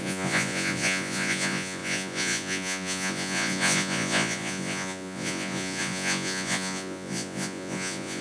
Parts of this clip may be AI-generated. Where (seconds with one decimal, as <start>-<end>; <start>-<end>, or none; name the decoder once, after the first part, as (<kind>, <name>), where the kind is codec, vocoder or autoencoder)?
0.0-8.2 (vocoder, Vocos)